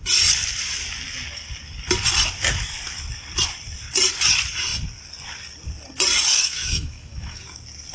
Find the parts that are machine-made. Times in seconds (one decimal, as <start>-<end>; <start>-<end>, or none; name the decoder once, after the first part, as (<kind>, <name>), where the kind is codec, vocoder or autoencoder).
6.3-7.4 (autoencoder, DAC-VAE)